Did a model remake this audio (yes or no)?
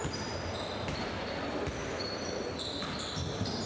yes